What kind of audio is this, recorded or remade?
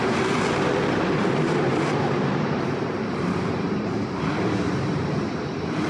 remade